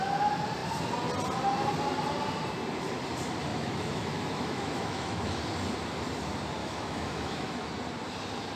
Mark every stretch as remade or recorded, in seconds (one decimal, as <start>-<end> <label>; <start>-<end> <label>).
0.0-3.5 recorded; 3.5-5.4 remade; 5.4-6.6 recorded; 6.6-7.7 remade; 7.7-8.6 recorded